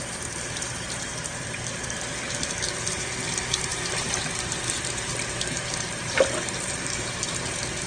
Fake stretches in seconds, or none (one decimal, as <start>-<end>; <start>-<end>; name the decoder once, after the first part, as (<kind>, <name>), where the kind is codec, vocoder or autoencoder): 0.0-7.9 (vocoder, BigVGAN v2)